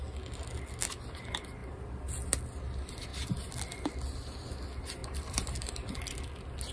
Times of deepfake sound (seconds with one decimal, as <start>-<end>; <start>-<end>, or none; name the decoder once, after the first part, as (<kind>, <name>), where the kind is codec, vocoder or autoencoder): 5.0-5.9 (vocoder, BigVGAN v2)